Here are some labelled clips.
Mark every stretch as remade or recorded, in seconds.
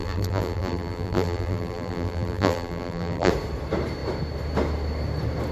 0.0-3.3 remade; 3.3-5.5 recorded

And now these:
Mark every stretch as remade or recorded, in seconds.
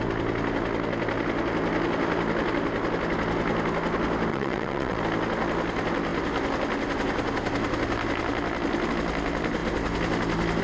0.0-4.3 recorded; 4.3-5.0 remade; 5.0-10.6 recorded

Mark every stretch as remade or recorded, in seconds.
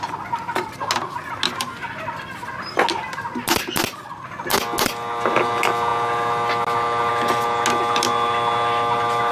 0.0-9.3 recorded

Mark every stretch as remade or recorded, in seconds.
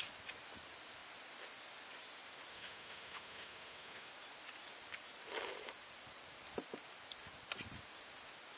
0.0-2.5 recorded; 2.5-4.1 remade; 4.1-8.6 recorded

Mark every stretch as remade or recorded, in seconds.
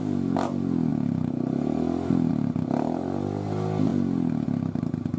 0.0-5.2 recorded